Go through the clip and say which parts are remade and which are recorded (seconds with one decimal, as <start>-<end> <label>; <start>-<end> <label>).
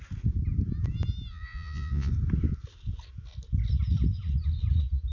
0.0-1.3 recorded; 1.3-2.1 remade; 2.1-5.1 recorded